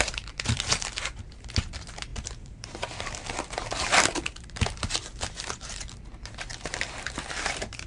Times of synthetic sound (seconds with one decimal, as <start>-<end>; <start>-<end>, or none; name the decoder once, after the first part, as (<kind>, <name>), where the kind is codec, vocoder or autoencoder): 0.0-7.9 (vocoder, BigVGAN v2)

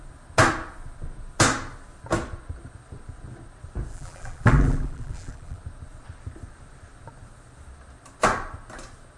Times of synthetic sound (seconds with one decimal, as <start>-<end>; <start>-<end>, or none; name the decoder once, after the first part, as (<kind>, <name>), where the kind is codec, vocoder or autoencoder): 3.9-5.6 (vocoder, BigVGAN v2)

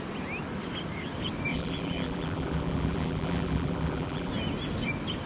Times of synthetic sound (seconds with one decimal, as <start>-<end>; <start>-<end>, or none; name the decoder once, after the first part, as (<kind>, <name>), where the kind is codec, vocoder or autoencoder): 1.5-4.3 (vocoder, BigVGAN v2)

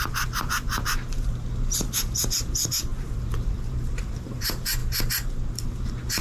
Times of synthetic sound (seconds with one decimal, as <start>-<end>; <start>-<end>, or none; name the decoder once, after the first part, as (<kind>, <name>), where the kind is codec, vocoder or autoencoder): 0.0-4.8 (vocoder, BigVGAN v2); 5.5-6.2